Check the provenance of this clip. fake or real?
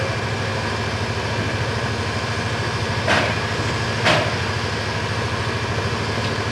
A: real